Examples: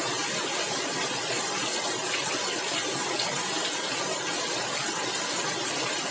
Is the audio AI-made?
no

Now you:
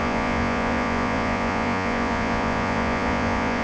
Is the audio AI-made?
yes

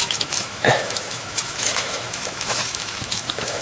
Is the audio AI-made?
yes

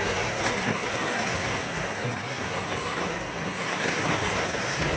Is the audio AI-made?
yes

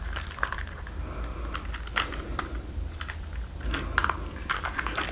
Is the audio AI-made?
no